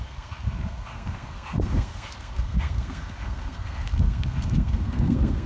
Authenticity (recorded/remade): remade